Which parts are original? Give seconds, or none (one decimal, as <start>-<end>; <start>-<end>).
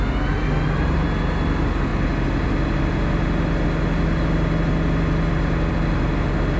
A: 0.0-6.6